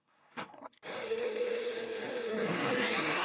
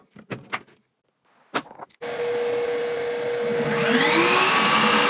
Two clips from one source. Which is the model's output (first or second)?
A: first